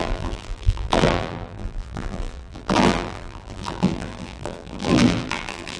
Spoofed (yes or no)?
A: yes